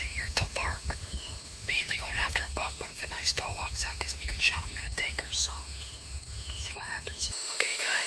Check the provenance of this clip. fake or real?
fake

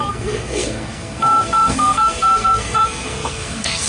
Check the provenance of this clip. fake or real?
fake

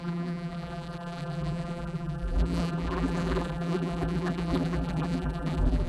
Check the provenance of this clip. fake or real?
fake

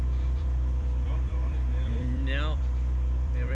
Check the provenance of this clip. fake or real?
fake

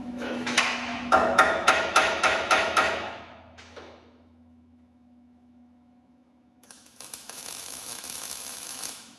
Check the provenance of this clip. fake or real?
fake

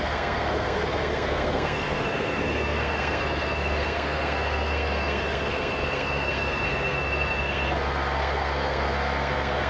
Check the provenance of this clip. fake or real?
fake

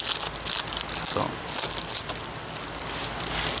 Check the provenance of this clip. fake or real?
real